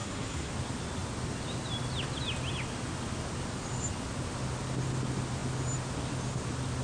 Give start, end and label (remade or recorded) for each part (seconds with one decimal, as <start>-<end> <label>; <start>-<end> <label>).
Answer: 0.0-0.5 remade; 0.5-6.8 recorded